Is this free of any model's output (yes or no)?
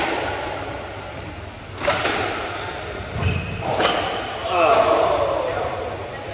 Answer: yes